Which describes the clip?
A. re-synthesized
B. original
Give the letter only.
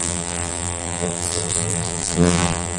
A